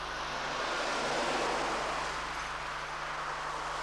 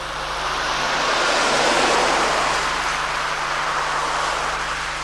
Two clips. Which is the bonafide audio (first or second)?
first